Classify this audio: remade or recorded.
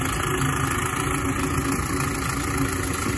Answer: recorded